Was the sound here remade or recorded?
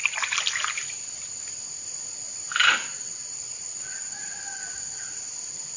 recorded